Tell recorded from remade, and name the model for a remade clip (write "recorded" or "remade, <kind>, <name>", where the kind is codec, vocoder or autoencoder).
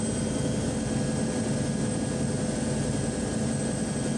recorded